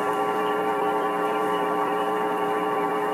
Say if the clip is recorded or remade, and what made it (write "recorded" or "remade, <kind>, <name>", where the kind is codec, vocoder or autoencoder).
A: remade, vocoder, BigVGAN v2